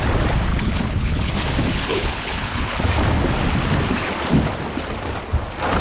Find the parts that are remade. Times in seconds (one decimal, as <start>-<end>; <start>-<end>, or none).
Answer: 0.5-1.3; 1.9-2.8